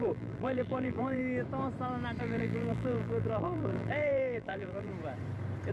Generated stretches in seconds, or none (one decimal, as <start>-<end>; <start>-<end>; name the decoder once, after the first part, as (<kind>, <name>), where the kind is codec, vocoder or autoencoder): 0.0-1.2 (vocoder, BigVGAN v2); 2.2-4.9